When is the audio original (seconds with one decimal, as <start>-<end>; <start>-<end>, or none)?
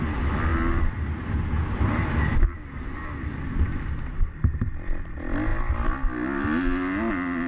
0.0-7.5